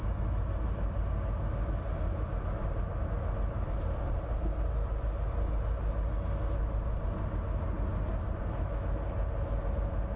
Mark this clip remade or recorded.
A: recorded